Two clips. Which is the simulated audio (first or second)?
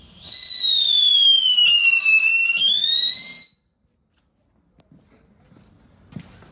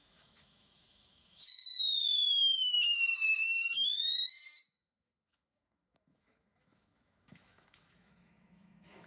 second